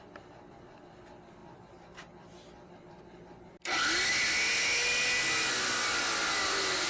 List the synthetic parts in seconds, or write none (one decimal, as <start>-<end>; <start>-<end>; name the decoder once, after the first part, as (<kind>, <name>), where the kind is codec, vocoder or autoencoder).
none